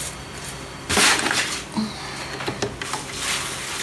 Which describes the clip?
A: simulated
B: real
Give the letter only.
B